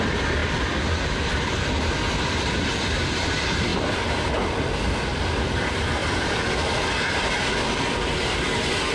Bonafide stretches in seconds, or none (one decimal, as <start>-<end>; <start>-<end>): 0.4-1.3; 3.7-4.7; 6.0-8.9